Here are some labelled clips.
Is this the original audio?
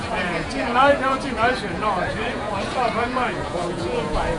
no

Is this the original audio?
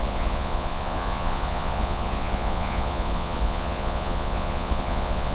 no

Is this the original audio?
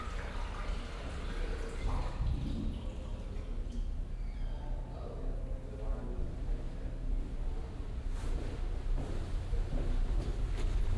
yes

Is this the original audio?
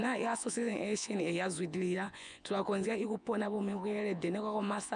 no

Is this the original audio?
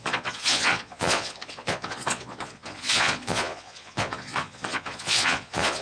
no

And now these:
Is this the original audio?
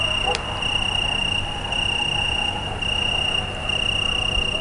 yes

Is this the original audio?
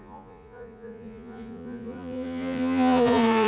no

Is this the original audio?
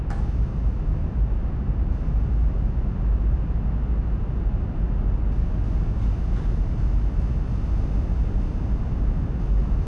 yes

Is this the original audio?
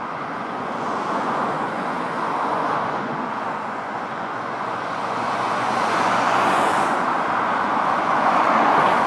no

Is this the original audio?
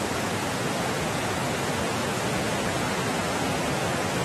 no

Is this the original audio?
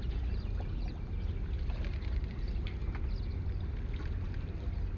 yes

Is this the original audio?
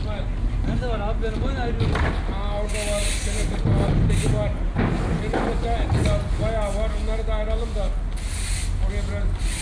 yes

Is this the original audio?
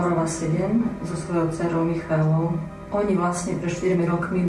yes